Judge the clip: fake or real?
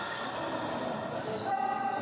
real